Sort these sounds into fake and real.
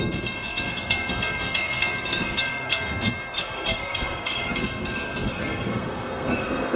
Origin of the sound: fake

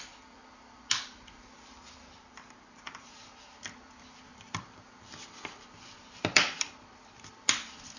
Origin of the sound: fake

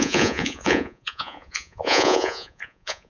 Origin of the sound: fake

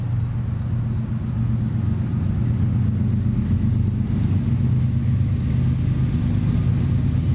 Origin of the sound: real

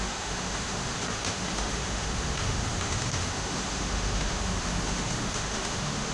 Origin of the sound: fake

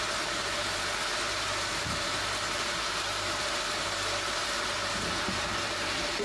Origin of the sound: fake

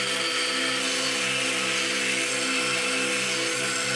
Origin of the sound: real